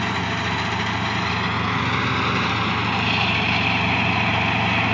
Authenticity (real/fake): real